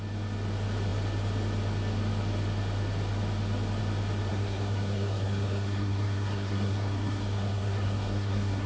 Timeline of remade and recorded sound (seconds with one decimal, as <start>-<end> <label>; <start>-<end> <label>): 0.0-4.3 recorded; 4.3-8.7 remade